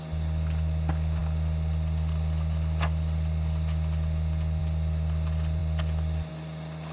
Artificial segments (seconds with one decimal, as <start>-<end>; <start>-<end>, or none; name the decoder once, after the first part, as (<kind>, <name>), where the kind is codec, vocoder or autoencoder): none